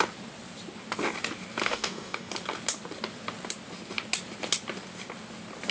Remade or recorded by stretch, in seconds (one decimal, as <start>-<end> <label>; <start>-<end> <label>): 0.0-1.6 recorded; 1.6-2.3 remade; 2.3-5.7 recorded